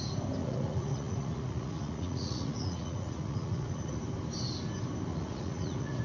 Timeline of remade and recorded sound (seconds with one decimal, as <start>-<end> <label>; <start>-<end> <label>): 0.0-0.4 recorded; 0.4-4.0 remade; 4.0-5.1 recorded; 5.1-6.0 remade